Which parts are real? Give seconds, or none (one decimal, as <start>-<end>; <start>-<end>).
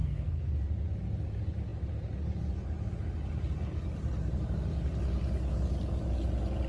0.5-6.7